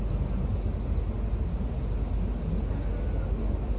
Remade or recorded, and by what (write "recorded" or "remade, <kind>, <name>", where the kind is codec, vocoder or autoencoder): recorded